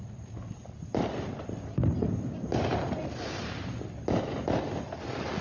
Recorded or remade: recorded